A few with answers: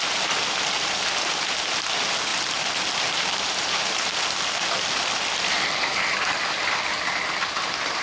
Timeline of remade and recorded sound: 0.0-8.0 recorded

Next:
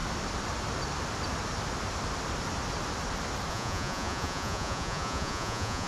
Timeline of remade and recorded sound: 0.0-3.5 recorded; 3.5-5.9 remade

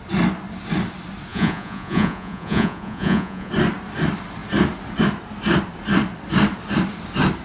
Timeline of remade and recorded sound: 0.0-1.3 recorded; 1.3-3.5 remade; 3.5-7.4 recorded

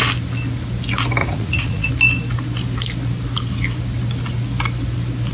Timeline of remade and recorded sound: 0.0-1.2 recorded; 1.2-1.9 remade; 1.9-5.3 recorded